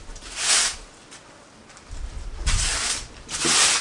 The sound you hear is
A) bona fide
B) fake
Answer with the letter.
A